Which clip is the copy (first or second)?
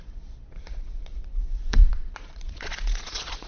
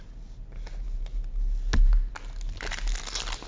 first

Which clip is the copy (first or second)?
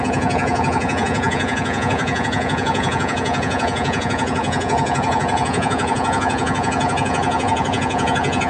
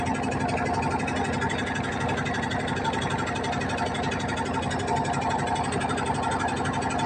first